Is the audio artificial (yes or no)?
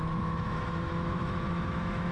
yes